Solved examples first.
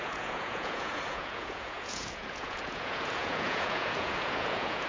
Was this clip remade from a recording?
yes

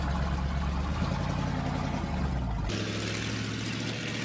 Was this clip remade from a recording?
no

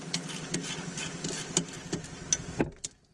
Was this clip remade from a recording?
no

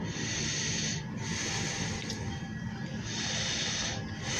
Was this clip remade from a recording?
no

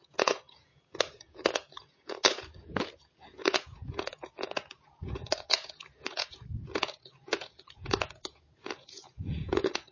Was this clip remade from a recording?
yes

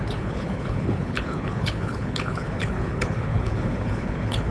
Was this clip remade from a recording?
yes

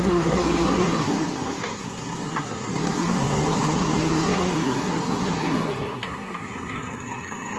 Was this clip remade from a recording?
yes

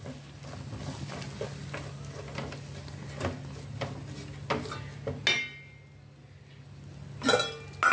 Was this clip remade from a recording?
no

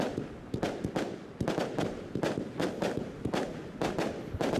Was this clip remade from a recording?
no